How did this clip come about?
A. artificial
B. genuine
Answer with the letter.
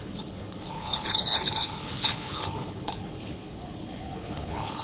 A